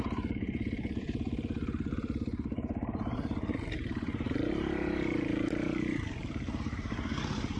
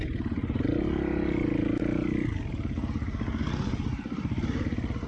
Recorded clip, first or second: second